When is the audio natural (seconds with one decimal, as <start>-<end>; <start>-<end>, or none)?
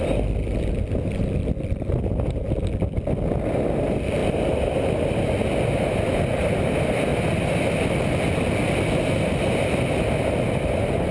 0.0-11.1